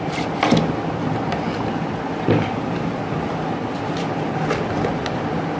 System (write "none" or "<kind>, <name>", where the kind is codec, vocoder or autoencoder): none